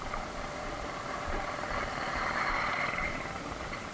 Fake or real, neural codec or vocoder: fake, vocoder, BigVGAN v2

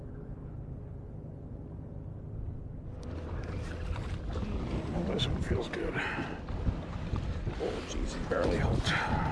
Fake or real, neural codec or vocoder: real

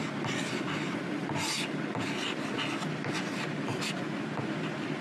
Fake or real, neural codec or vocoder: real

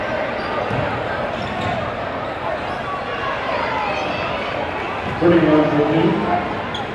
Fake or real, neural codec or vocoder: real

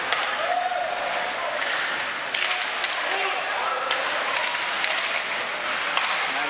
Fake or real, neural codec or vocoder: real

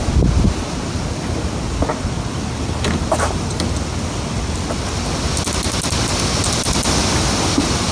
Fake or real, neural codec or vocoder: real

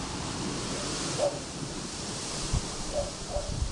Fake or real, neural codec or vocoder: fake, vocoder, BigVGAN v2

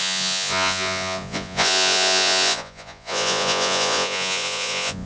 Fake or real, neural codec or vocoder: fake, vocoder, Vocos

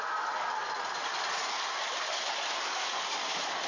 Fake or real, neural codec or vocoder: real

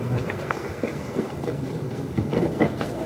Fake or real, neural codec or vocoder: fake, codec, SNAC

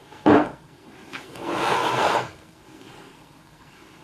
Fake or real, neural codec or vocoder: fake, codec, SNAC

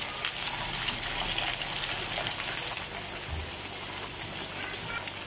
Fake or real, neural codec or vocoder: real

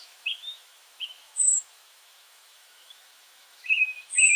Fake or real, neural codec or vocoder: fake, autoencoder, DAC-VAE